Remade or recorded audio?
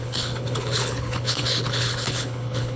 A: remade